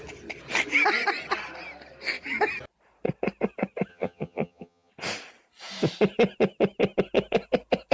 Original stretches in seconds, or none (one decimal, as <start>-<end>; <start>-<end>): 0.0-3.9; 4.9-7.9